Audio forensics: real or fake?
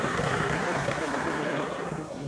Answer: fake